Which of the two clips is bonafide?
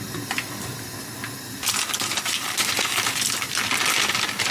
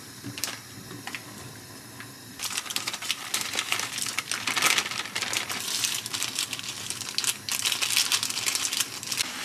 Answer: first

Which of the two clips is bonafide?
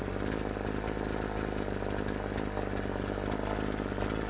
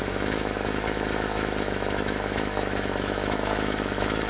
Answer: first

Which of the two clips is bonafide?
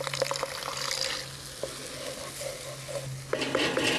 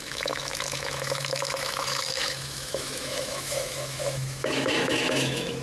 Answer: first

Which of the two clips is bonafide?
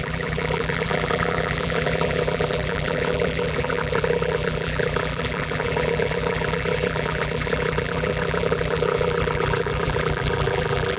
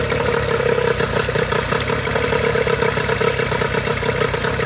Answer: second